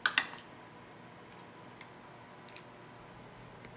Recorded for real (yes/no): yes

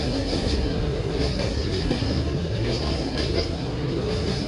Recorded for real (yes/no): no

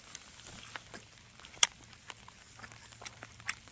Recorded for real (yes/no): yes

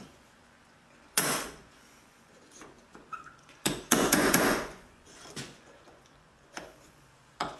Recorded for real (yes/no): no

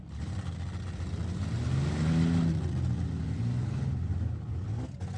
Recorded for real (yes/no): yes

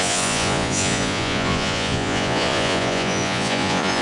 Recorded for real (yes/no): no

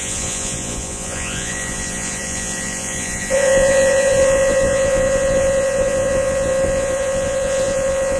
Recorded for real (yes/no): no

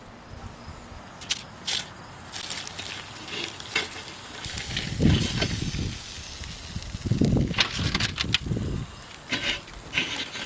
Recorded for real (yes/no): yes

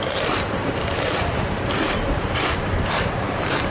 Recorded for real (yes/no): no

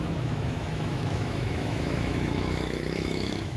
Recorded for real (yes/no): no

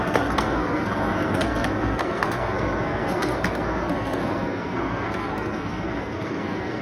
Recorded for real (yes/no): no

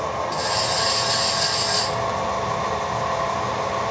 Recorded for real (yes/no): yes